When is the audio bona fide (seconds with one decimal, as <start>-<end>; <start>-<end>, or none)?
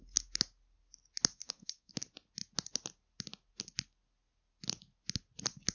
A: 0.0-1.3; 1.9-5.7